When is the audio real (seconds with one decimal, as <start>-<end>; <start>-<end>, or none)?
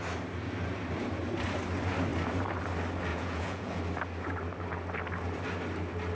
0.0-3.1; 3.8-6.1